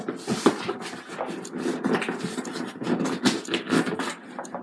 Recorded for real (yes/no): yes